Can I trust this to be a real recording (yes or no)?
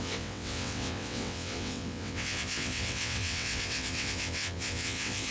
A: no